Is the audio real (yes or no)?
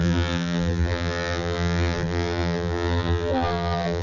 no